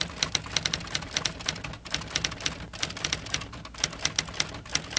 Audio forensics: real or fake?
real